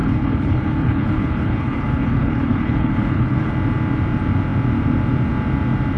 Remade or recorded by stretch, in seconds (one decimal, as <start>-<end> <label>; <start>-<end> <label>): 0.0-3.5 remade; 3.5-6.0 recorded